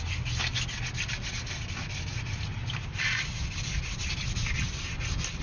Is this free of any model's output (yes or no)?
yes